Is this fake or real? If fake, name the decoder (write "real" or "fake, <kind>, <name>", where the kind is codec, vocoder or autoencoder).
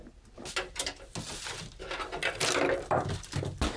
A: real